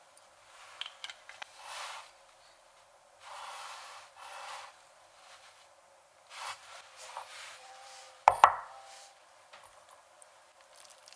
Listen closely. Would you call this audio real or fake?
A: fake